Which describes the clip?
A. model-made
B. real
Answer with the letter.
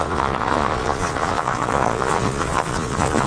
A